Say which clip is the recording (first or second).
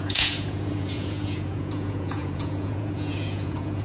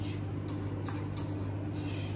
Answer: second